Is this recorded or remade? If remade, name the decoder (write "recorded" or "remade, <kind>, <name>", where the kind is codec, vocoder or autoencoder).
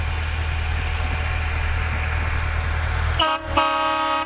recorded